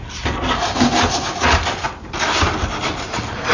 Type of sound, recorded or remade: recorded